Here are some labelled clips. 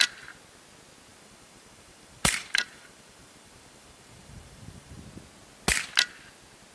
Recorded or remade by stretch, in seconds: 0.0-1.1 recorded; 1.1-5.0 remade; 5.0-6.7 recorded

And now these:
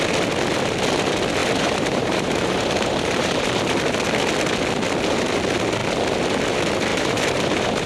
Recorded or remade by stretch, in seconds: 0.0-1.4 recorded; 1.4-3.8 remade; 3.8-6.9 recorded; 6.9-7.9 remade

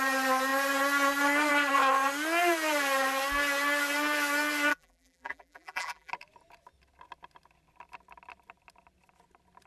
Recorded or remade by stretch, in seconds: 0.0-4.7 recorded; 4.7-6.1 remade; 6.1-9.7 recorded

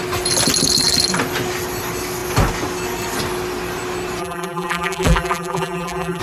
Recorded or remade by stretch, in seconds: 0.0-4.2 recorded; 4.2-6.2 remade

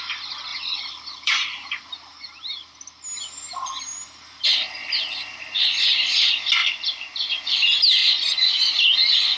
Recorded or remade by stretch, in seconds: 0.0-0.5 recorded; 0.5-1.9 remade; 1.9-6.6 recorded; 6.6-7.3 remade; 7.3-8.0 recorded; 8.0-8.6 remade; 8.6-9.4 recorded

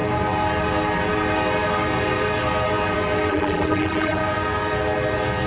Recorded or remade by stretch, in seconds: 0.0-3.3 recorded; 3.3-4.2 remade; 4.2-5.5 recorded

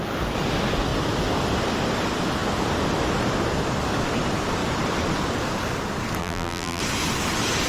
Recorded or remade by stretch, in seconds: 0.0-6.2 recorded; 6.2-6.8 remade; 6.8-7.7 recorded

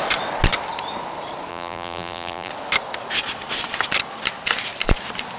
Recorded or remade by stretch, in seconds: 0.0-1.5 recorded; 1.5-2.5 remade; 2.5-5.4 recorded